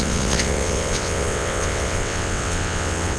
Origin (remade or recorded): remade